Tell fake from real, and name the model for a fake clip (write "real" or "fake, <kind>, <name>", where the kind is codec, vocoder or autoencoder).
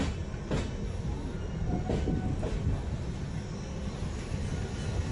real